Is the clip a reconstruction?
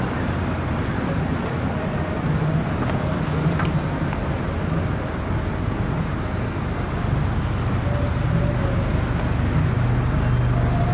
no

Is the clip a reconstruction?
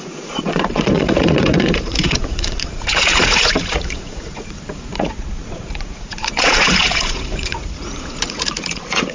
yes